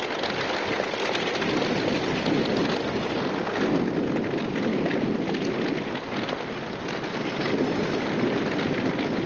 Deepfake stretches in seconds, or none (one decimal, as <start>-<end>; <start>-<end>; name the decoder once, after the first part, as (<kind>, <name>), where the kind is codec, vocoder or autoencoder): none